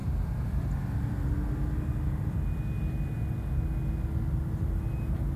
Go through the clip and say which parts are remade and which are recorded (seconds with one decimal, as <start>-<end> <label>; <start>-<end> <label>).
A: 0.0-5.4 recorded